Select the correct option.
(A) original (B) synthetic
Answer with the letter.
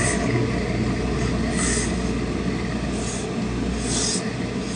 A